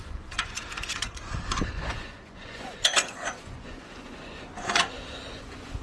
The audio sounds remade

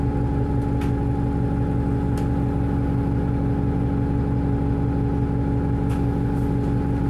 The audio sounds recorded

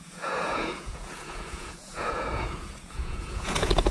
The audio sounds remade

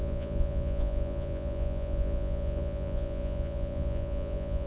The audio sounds remade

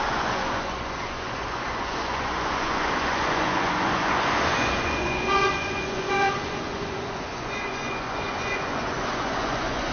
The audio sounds remade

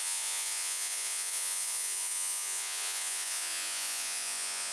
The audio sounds remade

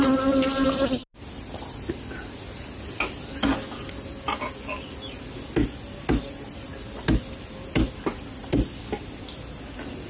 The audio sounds recorded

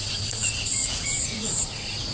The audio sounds remade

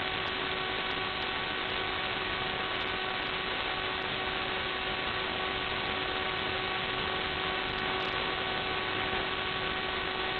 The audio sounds recorded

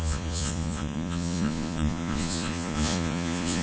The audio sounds remade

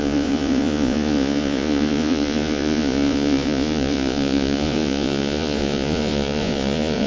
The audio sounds remade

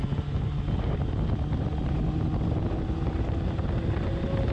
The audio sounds recorded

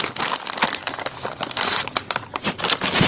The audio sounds recorded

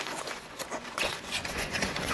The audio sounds remade